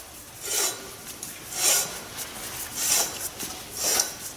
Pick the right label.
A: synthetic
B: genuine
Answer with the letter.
B